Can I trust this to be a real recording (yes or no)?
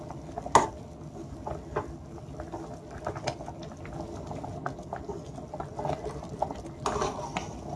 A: yes